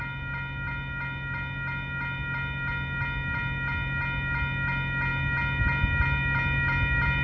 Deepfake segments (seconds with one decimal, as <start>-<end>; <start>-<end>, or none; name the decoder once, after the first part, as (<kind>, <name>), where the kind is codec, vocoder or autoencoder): none